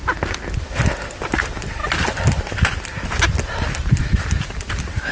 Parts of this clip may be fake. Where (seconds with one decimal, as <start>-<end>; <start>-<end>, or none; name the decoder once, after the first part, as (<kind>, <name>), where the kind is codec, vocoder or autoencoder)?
none